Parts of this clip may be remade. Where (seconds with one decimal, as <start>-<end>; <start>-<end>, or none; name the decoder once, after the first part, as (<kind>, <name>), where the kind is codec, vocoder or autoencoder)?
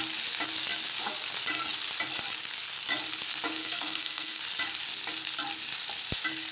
3.6-4.4 (codec, SNAC)